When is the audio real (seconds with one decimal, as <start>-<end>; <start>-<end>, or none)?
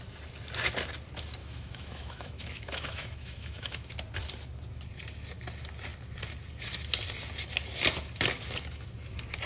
0.0-1.4; 3.9-9.5